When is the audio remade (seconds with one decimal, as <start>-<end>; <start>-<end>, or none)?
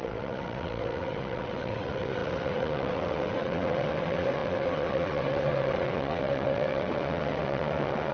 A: 0.0-8.1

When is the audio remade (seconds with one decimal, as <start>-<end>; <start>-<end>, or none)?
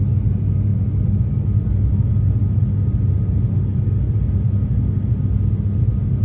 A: none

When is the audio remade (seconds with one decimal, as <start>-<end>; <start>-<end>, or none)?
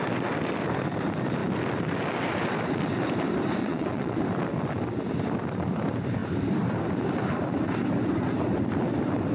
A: 3.6-4.2